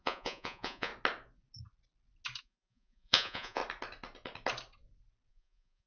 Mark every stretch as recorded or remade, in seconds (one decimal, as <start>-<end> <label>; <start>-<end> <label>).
0.0-0.9 remade; 0.9-2.4 recorded; 2.4-3.6 remade; 3.6-5.3 recorded; 5.3-5.9 remade